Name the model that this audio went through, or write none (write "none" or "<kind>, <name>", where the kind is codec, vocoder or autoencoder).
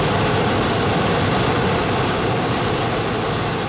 none